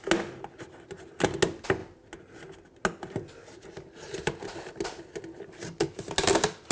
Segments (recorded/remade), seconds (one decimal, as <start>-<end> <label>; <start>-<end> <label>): 0.0-6.7 recorded